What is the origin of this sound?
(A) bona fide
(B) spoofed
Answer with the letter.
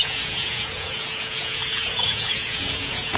B